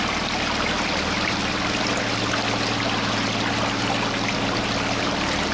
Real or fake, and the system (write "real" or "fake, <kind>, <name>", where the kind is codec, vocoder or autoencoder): real